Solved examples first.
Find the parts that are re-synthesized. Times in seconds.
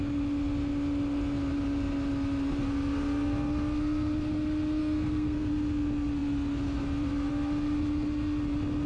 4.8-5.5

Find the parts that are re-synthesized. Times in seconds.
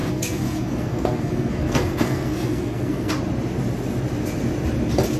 0.0-3.1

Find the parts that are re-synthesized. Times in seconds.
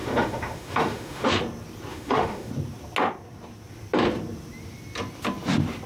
0.0-1.3; 1.9-2.5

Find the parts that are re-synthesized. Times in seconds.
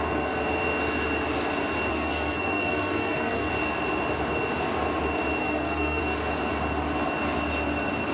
1.9-3.5; 5.4-6.0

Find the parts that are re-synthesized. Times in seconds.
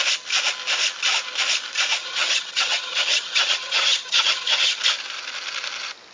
2.0-4.8